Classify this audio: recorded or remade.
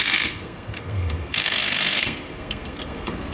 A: remade